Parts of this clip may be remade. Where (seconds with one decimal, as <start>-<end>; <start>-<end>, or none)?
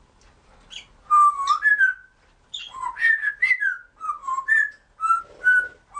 none